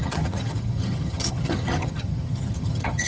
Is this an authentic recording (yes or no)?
no